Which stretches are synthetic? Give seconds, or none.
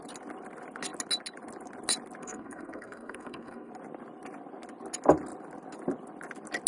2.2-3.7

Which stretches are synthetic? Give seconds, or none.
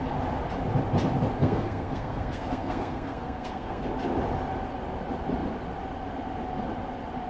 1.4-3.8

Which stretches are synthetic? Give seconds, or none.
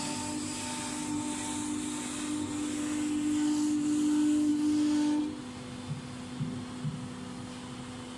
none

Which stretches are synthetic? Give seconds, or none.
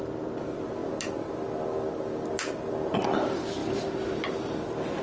3.6-5.0